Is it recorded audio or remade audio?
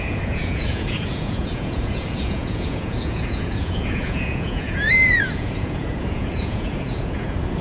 remade